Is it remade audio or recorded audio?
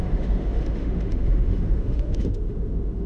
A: remade